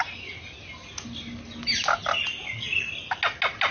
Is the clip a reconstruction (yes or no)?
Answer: no